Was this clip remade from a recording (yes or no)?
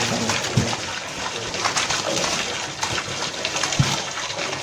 no